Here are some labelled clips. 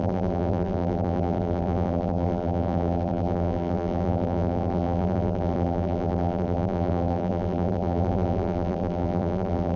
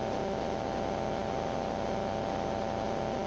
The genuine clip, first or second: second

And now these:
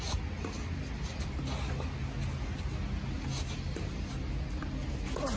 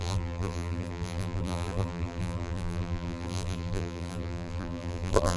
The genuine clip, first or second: first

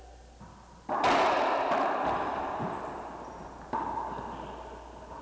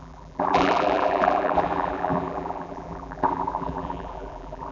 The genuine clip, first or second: first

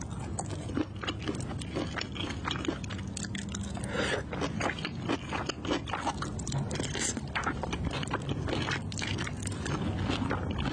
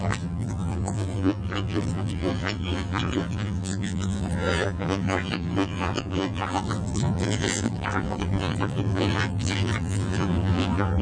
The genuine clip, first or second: first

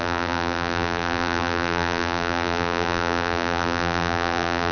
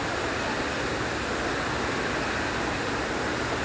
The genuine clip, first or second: second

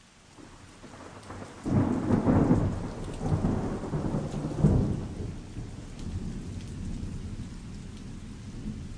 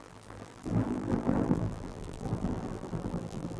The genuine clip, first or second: first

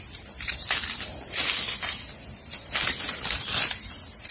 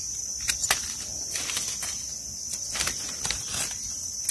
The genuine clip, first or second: second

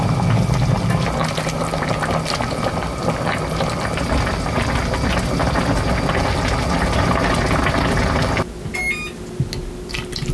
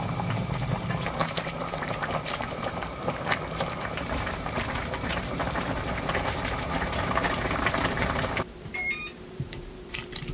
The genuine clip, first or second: first